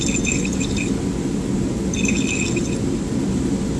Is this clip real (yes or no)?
yes